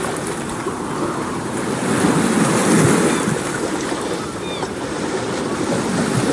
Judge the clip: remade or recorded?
recorded